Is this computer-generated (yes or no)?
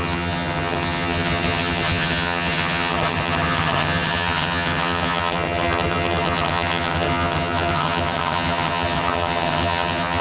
yes